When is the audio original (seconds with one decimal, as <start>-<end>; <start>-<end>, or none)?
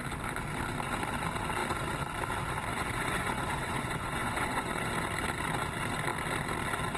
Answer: 0.0-2.7; 4.9-7.0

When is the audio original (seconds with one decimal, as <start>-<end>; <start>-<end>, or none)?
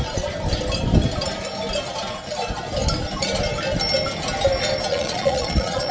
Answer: 0.0-4.9